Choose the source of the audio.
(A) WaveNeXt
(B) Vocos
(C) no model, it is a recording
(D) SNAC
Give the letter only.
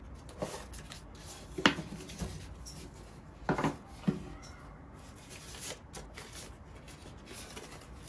C